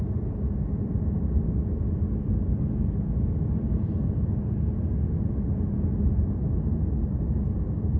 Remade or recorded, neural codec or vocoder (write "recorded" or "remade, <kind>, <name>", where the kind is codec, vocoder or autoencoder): recorded